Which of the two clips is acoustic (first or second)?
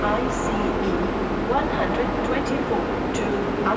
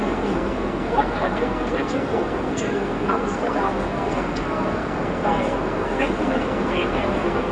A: first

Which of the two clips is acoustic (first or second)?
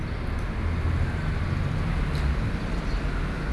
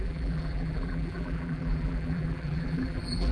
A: first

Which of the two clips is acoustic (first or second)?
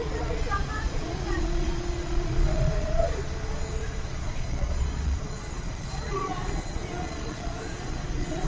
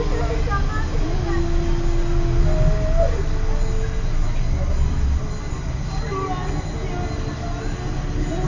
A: second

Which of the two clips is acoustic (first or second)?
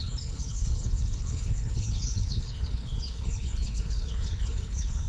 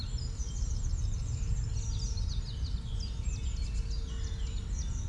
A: second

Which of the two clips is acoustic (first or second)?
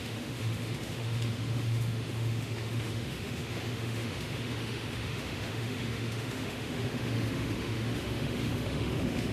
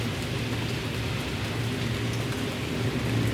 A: second